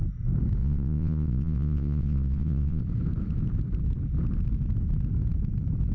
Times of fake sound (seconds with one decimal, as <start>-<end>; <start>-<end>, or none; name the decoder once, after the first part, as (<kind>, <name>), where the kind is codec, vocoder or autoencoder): 0.6-2.8 (vocoder, Vocos)